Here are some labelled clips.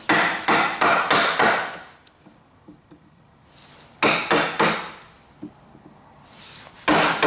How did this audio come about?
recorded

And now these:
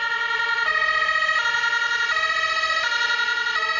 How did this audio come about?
remade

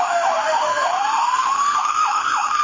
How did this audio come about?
remade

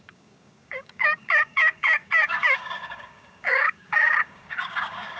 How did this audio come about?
remade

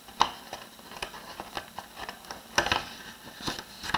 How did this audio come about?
recorded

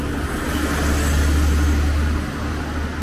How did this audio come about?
recorded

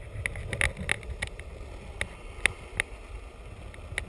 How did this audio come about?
recorded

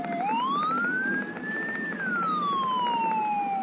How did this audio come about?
recorded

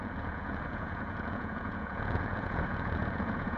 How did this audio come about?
remade